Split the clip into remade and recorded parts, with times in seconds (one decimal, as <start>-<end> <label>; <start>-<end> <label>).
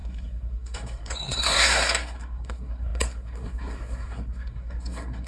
0.0-5.3 remade